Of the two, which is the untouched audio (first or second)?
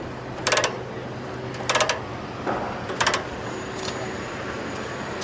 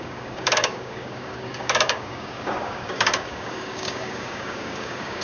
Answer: first